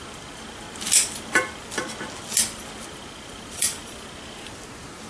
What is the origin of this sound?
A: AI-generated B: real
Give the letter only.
B